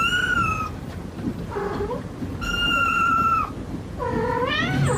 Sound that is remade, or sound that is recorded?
recorded